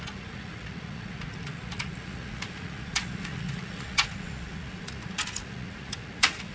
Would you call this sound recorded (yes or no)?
no